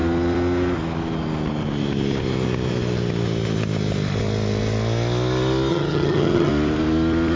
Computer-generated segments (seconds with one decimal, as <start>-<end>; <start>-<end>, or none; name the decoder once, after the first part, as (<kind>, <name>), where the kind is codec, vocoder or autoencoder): 5.7-6.5 (vocoder, HiFi-GAN)